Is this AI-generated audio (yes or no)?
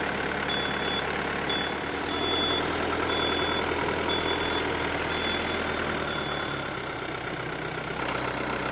no